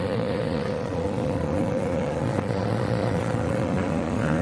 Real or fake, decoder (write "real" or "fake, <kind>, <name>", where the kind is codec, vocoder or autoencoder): fake, vocoder, Vocos